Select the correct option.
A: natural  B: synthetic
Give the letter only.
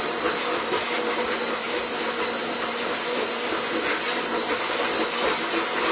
A